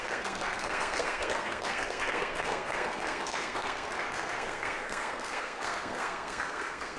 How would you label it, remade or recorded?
remade